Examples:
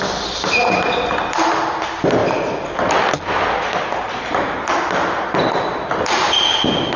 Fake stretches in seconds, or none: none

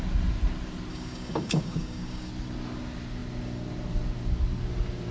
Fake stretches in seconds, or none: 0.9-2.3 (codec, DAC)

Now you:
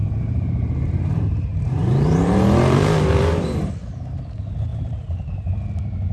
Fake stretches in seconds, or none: 0.0-3.7 (vocoder, BigVGAN v2); 4.7-5.5

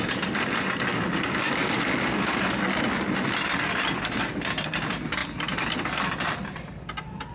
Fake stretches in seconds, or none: 1.6-2.3 (vocoder, BigVGAN v2); 5.2-6.7

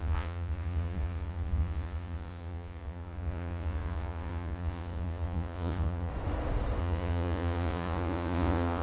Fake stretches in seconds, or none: 0.0-6.1 (vocoder, Vocos); 6.8-8.8

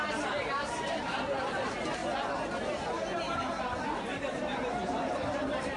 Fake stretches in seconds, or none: 0.0-2.0 (vocoder, BigVGAN v2); 2.6-5.8

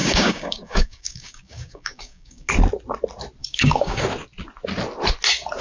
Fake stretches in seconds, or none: 0.0-2.5 (codec, DAC); 3.4-4.0

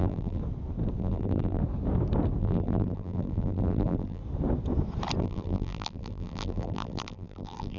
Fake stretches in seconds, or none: 0.0-0.4 (vocoder, BigVGAN v2); 1.0-1.6; 2.4-4.2; 5.2-7.8